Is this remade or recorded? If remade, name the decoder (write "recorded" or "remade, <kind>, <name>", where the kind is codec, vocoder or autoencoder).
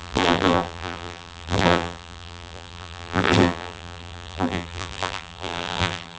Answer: remade, vocoder, BigVGAN v2